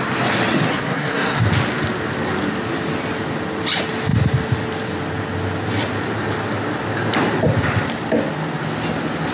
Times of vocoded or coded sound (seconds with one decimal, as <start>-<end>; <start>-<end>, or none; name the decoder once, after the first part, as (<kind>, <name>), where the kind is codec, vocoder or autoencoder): 0.7-1.4 (codec, SNAC)